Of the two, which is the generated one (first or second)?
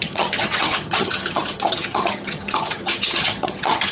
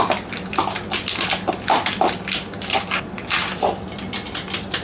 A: first